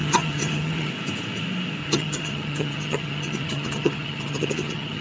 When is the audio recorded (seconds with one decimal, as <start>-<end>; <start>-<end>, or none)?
0.9-1.8